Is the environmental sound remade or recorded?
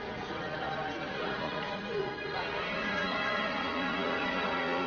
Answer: remade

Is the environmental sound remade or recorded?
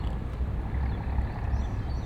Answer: recorded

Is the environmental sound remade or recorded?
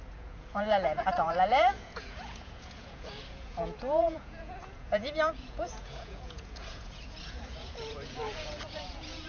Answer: remade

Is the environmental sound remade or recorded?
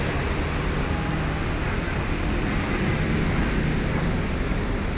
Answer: recorded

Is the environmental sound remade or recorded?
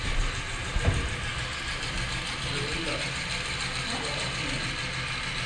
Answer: recorded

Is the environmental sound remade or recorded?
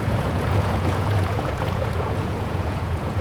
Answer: remade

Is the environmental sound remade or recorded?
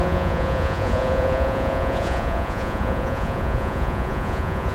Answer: remade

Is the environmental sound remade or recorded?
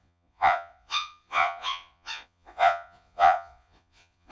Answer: remade